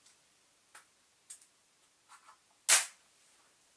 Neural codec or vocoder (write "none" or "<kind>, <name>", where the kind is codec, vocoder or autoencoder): none